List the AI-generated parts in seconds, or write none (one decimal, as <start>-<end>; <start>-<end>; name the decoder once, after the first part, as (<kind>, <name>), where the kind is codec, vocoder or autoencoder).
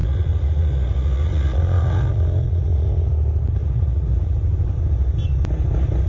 0.0-3.1 (vocoder, Vocos); 3.6-4.4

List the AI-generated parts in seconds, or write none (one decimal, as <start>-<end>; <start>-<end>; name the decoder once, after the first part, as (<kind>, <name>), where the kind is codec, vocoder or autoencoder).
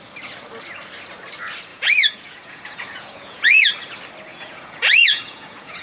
1.7-3.7 (vocoder, Vocos); 4.3-5.8